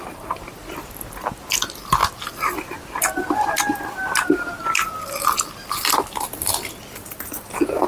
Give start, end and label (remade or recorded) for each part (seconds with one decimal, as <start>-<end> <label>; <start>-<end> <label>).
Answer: 0.0-7.9 recorded